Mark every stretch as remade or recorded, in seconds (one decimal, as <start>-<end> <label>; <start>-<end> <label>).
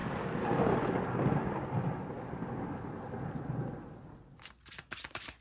0.0-5.4 recorded